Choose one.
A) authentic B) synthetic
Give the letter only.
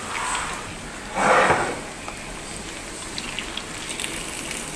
A